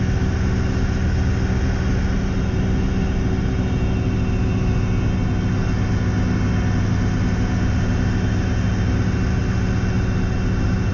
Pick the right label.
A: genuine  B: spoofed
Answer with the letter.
A